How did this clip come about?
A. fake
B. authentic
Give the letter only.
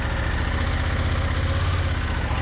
B